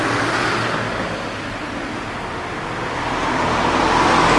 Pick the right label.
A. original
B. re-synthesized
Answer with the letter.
A